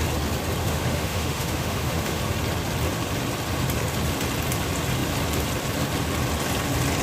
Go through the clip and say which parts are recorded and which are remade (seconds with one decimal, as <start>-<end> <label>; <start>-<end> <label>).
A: 0.0-0.6 recorded; 0.6-2.2 remade; 2.2-7.0 recorded